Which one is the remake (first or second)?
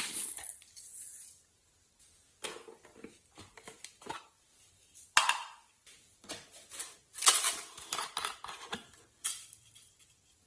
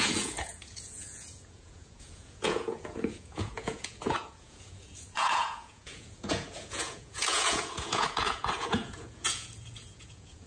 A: second